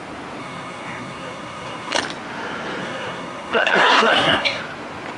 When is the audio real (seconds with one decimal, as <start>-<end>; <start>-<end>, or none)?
0.0-0.4; 2.0-2.8; 4.6-5.2